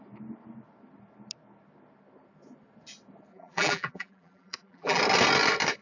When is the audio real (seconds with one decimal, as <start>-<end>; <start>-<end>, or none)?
0.0-3.3; 5.0-5.8